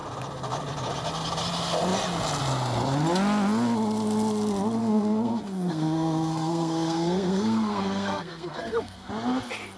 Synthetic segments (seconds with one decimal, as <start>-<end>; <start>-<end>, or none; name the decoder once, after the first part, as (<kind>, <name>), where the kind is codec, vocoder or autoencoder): 4.8-9.1 (codec, SNAC)